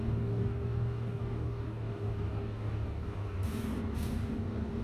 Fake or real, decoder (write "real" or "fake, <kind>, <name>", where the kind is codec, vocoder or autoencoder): fake, codec, DAC